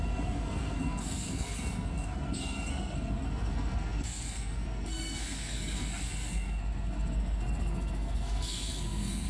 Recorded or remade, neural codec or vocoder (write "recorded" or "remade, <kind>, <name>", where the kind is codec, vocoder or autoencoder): remade, codec, SNAC